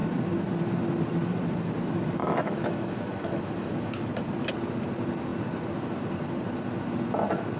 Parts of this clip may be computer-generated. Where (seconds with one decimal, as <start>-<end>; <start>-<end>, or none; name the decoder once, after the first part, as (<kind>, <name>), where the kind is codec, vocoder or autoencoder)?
2.2-4.1 (autoencoder, DAC-VAE)

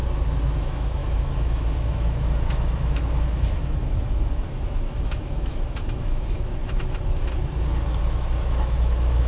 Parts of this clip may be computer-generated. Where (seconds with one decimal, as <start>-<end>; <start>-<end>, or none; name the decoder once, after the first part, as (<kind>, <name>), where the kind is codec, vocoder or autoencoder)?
0.6-6.6 (autoencoder, DAC-VAE); 8.0-9.3